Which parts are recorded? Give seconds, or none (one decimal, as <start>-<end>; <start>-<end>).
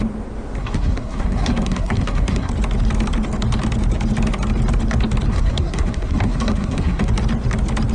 0.0-0.6; 2.5-5.3; 7.1-7.9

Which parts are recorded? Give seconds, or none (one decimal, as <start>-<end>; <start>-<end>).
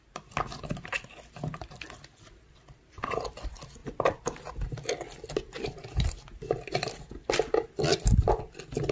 0.0-8.9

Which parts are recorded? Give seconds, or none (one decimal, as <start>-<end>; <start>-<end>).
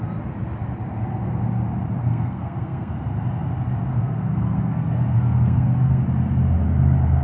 0.0-2.0; 2.9-3.9; 6.0-7.2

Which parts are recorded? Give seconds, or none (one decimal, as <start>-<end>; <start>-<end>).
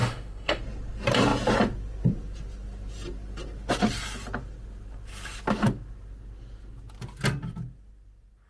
0.6-8.5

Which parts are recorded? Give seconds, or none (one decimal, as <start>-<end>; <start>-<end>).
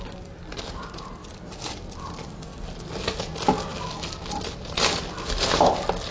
0.0-6.1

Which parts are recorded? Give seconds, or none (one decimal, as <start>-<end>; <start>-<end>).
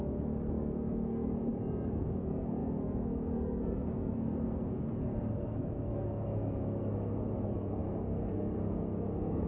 none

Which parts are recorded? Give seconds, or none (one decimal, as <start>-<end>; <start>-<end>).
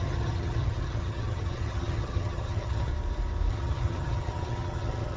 2.9-3.5